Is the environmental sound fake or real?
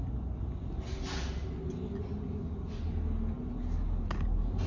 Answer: real